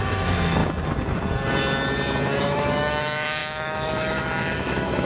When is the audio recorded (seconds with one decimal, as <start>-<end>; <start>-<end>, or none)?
0.6-2.4